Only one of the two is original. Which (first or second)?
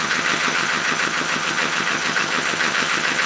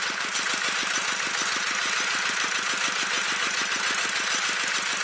second